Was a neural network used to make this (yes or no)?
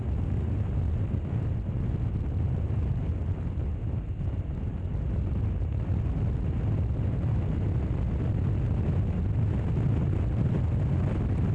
no